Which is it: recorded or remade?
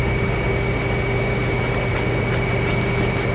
recorded